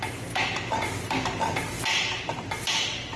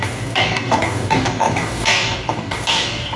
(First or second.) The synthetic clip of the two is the second